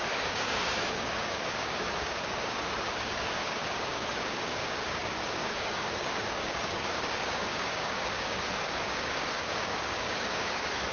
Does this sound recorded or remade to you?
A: remade